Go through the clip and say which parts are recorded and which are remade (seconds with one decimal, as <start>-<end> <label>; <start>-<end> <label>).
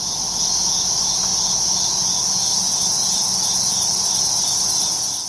0.0-5.3 recorded